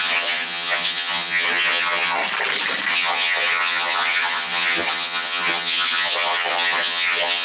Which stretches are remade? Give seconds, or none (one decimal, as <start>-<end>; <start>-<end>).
0.0-2.2; 2.9-7.4